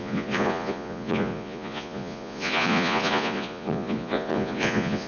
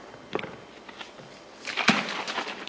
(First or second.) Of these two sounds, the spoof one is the first